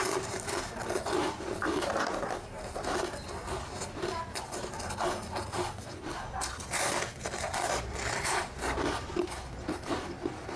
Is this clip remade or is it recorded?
recorded